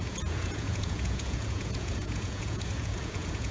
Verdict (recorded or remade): remade